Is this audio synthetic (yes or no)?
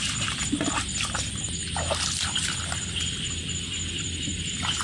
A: no